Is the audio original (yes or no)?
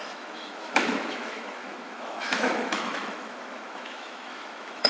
no